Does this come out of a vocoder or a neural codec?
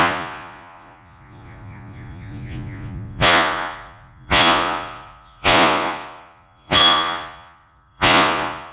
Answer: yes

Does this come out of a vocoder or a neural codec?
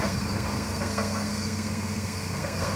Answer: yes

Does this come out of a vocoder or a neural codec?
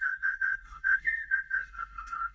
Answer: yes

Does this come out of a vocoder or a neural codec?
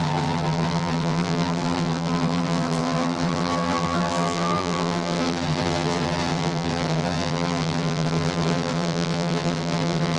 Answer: yes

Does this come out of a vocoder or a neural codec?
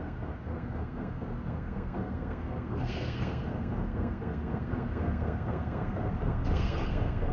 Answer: yes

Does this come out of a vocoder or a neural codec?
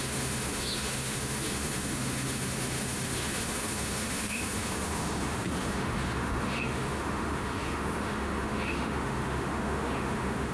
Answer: yes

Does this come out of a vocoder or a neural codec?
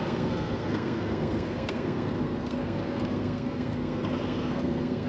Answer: yes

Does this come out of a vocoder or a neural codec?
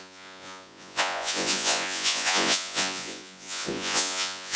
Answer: yes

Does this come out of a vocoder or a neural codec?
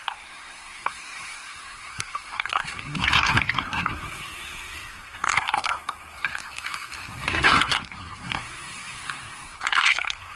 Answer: yes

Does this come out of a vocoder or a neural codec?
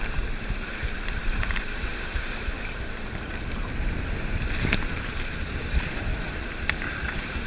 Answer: yes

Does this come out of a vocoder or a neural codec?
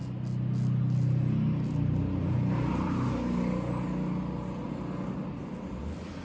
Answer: no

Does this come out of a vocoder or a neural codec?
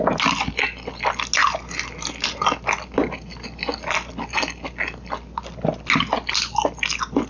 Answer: no